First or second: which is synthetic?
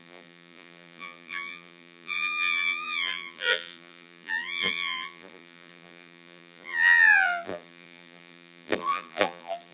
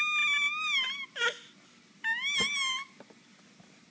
first